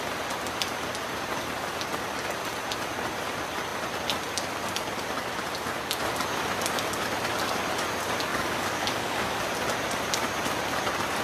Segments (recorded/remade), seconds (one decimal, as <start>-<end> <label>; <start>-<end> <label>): 0.0-8.3 recorded; 8.3-9.4 remade; 9.4-11.2 recorded